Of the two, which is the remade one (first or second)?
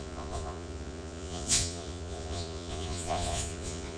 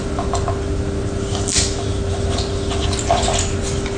first